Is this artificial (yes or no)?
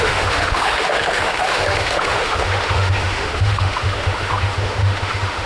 yes